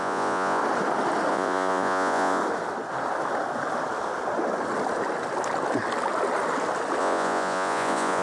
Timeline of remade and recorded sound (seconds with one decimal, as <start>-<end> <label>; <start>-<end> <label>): 0.0-0.6 remade; 0.6-1.3 recorded; 1.3-2.4 remade; 2.4-7.0 recorded; 7.0-8.2 remade